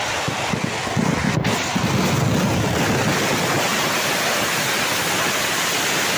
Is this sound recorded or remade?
recorded